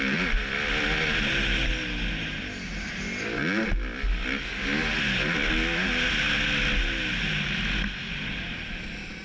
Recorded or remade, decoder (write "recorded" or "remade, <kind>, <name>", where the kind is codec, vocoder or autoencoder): recorded